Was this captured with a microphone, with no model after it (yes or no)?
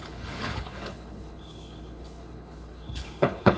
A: no